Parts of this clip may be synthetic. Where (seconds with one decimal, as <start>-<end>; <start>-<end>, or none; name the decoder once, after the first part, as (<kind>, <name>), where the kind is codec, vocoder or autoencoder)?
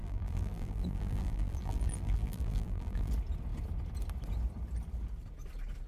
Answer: 0.0-3.1 (vocoder, BigVGAN v2)